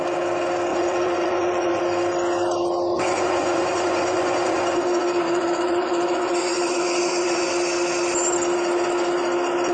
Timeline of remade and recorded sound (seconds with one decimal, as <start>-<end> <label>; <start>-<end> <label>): 0.0-0.7 recorded; 0.7-1.8 remade; 1.8-2.9 recorded; 2.9-7.5 remade; 7.5-9.7 recorded